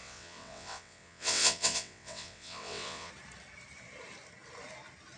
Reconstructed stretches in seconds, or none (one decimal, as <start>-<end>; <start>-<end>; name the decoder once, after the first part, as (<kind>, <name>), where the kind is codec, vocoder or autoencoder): 0.0-3.1 (vocoder, WaveNeXt)